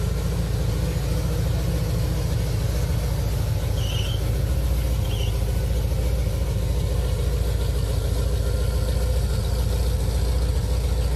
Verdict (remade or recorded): recorded